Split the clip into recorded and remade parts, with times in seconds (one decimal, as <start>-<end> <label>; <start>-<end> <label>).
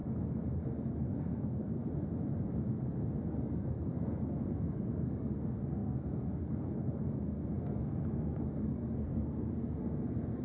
0.0-0.5 recorded; 0.5-1.8 remade; 1.8-3.3 recorded; 3.3-10.4 remade